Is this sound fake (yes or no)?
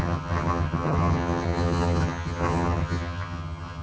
yes